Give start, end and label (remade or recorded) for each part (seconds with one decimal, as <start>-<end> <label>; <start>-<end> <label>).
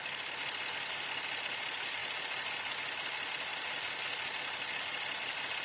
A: 0.0-5.6 recorded